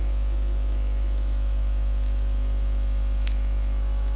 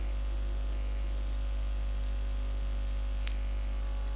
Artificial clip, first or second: first